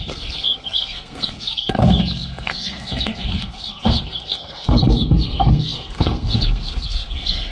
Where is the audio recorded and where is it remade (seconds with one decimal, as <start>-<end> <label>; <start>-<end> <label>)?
0.0-7.5 remade